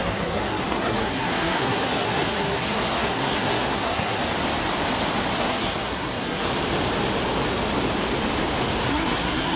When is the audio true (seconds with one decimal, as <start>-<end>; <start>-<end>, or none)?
4.2-5.4; 6.5-8.9